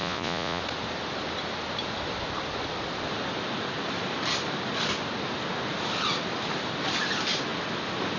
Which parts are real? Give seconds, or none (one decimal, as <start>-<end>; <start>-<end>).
0.6-8.2